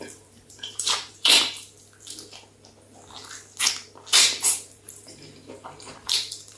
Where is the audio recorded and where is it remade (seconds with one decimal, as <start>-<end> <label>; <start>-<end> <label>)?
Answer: 0.0-1.3 remade; 1.3-4.2 recorded; 4.2-6.6 remade